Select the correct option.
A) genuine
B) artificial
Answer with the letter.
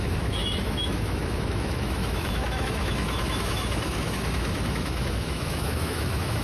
B